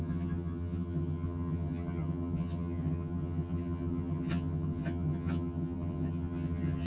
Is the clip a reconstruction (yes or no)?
yes